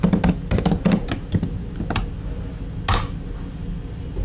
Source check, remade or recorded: recorded